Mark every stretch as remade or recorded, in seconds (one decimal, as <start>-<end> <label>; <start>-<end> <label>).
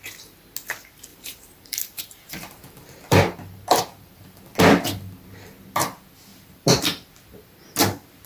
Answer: 0.0-1.1 recorded; 1.1-4.4 remade; 4.4-6.3 recorded; 6.3-6.8 remade; 6.8-8.3 recorded